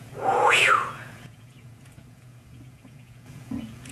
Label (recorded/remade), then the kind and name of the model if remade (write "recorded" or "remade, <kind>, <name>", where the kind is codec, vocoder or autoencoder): remade, vocoder, Vocos